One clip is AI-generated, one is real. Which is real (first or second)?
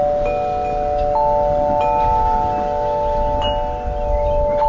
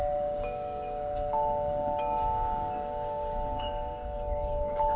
first